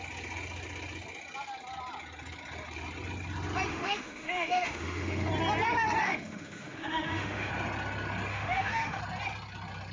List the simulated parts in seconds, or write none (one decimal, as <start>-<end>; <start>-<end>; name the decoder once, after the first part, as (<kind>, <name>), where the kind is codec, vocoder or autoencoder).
3.7-5.3 (autoencoder, DAC-VAE); 6.0-7.5; 8.3-9.0